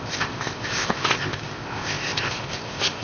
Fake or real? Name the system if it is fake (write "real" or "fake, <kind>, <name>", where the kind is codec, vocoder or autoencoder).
fake, codec, ZipCodec